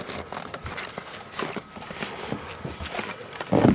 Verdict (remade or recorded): recorded